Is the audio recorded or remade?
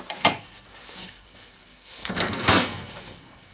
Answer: remade